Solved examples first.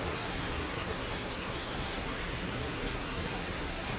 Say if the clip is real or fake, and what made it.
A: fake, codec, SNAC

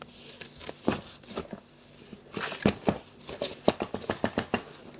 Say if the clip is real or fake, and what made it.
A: real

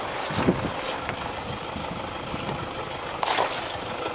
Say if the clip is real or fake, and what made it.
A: real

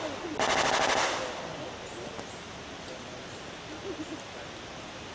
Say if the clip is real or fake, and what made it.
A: real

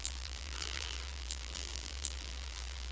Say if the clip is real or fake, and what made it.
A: fake, vocoder, BigVGAN v2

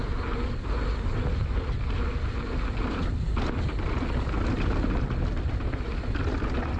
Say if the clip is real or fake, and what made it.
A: real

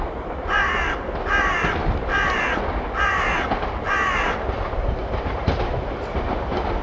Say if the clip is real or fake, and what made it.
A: real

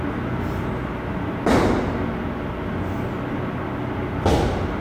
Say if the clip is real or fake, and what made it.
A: real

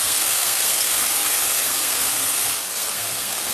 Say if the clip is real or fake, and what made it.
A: fake, codec, SNAC